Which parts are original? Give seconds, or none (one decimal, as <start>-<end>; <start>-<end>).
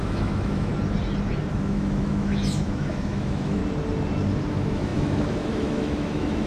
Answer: 0.7-1.5; 3.6-4.5